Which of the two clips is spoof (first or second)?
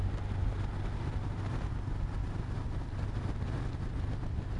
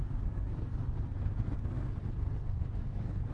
second